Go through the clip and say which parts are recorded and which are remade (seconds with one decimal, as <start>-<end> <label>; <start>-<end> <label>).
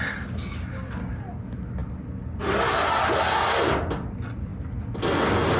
0.0-5.6 recorded